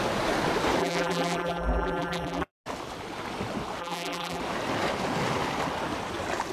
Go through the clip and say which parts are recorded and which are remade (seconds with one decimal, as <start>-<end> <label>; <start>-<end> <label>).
0.0-0.8 recorded; 0.8-2.5 remade; 2.5-3.8 recorded; 3.8-4.4 remade; 4.4-6.5 recorded